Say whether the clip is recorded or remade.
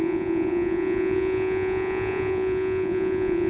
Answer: remade